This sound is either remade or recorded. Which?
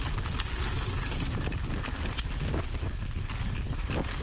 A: recorded